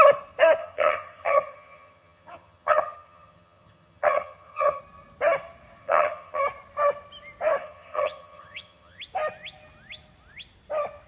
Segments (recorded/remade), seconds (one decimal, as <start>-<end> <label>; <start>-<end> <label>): 0.0-0.6 recorded; 0.6-4.8 remade; 4.8-5.8 recorded; 5.8-6.4 remade; 6.4-7.6 recorded; 7.6-9.0 remade; 9.0-11.1 recorded